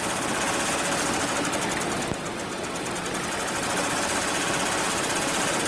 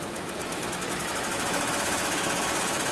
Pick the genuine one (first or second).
first